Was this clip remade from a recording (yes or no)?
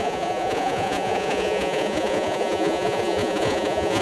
yes